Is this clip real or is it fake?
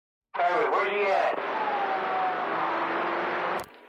real